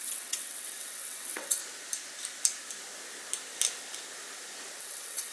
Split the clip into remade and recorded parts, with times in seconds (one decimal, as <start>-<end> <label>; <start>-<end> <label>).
0.0-1.6 remade; 1.6-4.8 recorded; 4.8-5.3 remade

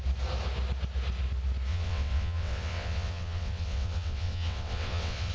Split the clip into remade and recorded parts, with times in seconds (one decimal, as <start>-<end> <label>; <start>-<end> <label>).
0.0-1.7 recorded; 1.7-5.3 remade